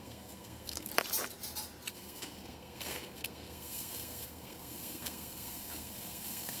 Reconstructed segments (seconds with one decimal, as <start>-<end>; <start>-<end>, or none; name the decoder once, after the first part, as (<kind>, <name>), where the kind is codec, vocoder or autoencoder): 0.0-0.9 (codec, SNAC); 1.9-6.6